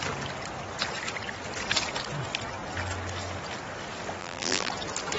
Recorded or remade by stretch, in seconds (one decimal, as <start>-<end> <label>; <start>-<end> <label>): 0.0-4.2 recorded; 4.2-4.7 remade; 4.7-5.2 recorded